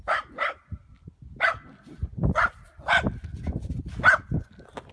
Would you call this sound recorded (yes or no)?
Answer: yes